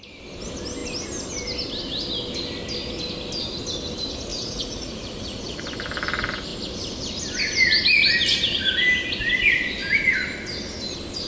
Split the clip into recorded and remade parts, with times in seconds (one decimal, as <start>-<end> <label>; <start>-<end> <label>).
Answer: 0.0-4.3 recorded; 4.3-5.6 remade; 5.6-11.3 recorded